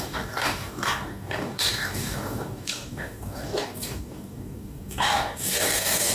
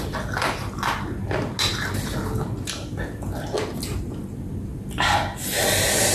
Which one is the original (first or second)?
second